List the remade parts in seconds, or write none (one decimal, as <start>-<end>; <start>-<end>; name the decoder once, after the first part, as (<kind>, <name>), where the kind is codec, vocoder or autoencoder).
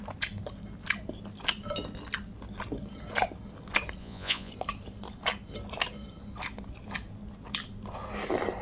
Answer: 4.0-4.5 (vocoder, Vocos)